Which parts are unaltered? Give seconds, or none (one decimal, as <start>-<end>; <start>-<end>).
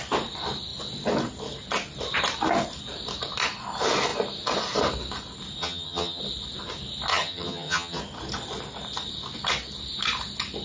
0.0-5.6; 6.2-7.1; 8.0-10.6